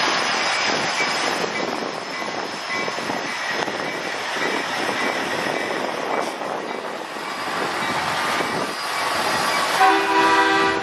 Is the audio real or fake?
real